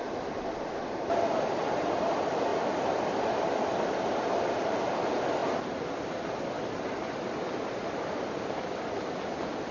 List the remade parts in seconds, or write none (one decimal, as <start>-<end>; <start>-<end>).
none